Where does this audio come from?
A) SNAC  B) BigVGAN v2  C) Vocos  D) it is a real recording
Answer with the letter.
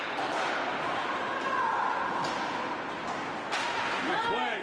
D